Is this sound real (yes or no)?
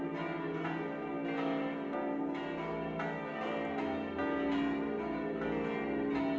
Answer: yes